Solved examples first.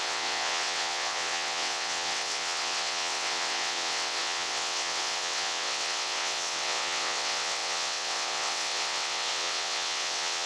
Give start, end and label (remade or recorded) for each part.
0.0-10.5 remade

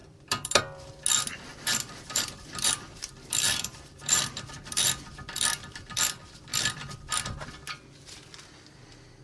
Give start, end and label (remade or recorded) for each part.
0.0-0.6 remade; 0.6-1.5 recorded; 1.5-5.9 remade; 5.9-6.5 recorded; 6.5-7.1 remade; 7.1-9.2 recorded

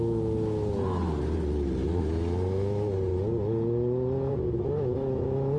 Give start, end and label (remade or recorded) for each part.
0.0-0.8 remade; 0.8-2.0 recorded; 2.0-3.1 remade; 3.1-4.3 recorded; 4.3-5.6 remade

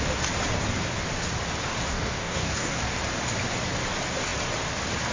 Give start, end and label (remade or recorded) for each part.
0.0-1.9 recorded; 1.9-3.0 remade; 3.0-5.1 recorded

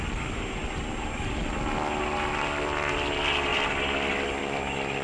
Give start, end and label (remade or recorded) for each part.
0.0-5.0 recorded